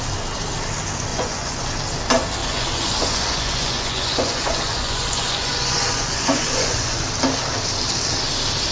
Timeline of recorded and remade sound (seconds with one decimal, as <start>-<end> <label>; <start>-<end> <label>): 0.0-1.1 recorded; 1.1-1.7 remade; 1.7-2.4 recorded; 2.4-7.0 remade; 7.0-8.7 recorded